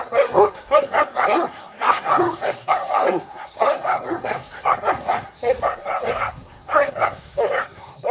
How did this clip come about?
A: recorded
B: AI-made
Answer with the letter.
B